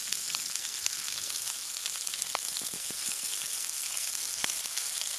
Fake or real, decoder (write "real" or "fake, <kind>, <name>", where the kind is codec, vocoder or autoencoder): fake, codec, SNAC